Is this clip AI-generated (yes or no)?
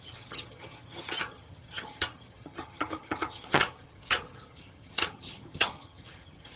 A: yes